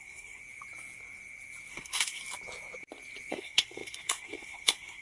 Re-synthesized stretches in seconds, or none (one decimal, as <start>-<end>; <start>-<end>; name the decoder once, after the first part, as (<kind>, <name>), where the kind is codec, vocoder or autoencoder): 0.0-0.4 (codec, SNAC); 1.7-2.2; 3.3-5.0